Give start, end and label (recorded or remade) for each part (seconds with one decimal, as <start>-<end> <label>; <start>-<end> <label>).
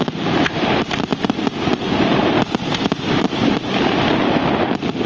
0.0-1.1 remade; 1.1-3.1 recorded; 3.1-5.1 remade